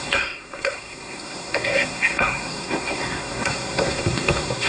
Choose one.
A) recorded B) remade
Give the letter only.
B